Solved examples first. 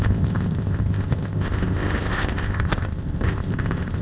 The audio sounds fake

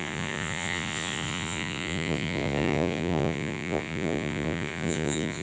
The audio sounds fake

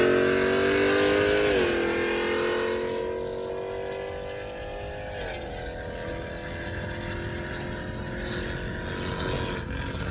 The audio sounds real